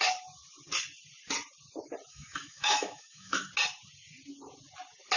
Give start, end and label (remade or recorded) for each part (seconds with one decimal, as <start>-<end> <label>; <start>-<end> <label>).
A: 0.0-2.1 recorded; 2.1-3.5 remade; 3.5-5.2 recorded